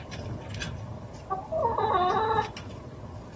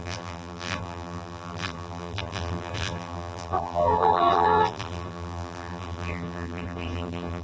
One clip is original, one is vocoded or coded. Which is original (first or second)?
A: first